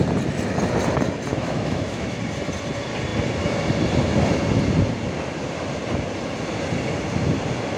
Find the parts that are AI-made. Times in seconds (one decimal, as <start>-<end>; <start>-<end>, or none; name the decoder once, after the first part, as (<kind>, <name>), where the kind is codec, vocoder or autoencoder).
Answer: 1.3-2.2 (autoencoder, DAC-VAE)